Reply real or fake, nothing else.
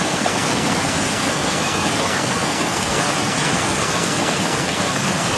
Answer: fake